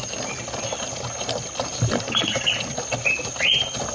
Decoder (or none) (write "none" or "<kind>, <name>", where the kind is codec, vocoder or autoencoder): none